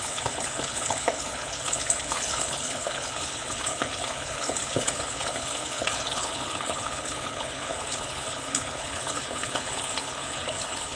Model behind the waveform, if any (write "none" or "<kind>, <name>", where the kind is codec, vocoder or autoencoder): codec, HILCodec